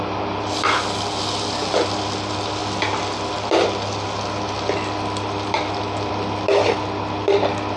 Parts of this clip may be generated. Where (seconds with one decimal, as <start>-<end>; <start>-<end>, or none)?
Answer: none